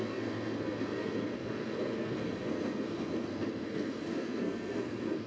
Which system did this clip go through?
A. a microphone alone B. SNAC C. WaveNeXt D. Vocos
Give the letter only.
B